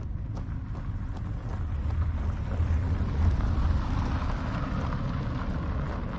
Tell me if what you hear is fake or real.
real